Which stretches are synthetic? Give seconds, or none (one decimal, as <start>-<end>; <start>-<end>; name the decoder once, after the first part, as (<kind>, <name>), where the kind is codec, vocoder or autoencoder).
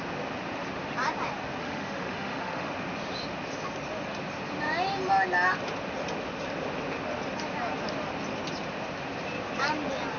1.6-2.7 (autoencoder, DAC-VAE)